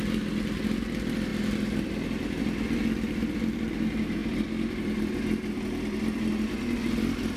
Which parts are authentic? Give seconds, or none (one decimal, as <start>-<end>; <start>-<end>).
0.0-7.4